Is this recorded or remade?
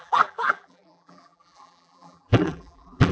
remade